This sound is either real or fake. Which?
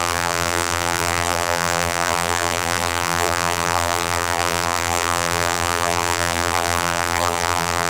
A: fake